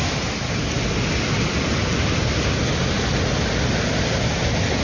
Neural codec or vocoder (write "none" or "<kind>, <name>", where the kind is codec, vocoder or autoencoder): none